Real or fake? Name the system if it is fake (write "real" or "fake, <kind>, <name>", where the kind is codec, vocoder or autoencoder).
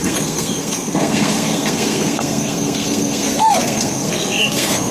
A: fake, codec, SNAC